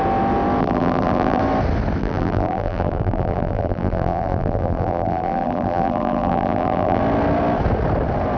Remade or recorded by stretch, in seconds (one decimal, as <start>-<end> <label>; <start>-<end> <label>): 0.0-0.6 recorded; 0.6-1.4 remade; 1.4-2.0 recorded; 2.0-7.0 remade; 7.0-8.4 recorded